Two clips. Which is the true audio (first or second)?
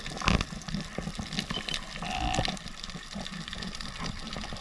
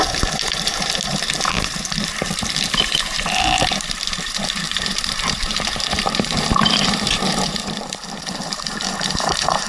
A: first